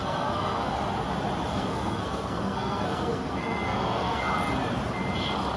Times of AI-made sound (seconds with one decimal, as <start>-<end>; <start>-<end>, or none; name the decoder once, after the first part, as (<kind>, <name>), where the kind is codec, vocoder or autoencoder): 0.0-0.7 (codec, SNAC); 1.5-4.2